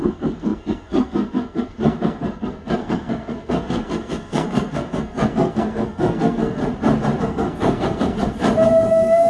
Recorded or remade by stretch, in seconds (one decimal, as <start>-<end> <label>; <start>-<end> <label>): 0.0-6.6 remade; 6.6-7.2 recorded; 7.2-8.4 remade; 8.4-8.9 recorded; 8.9-9.3 remade